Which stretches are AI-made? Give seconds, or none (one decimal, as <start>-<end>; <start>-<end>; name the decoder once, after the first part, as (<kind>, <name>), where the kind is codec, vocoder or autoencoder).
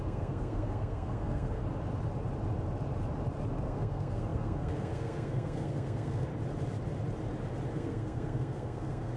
0.0-1.6 (codec, SNAC); 3.6-6.3; 7.7-9.2